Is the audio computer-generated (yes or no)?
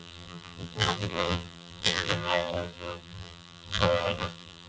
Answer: yes